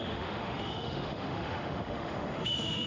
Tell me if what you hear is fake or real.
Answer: fake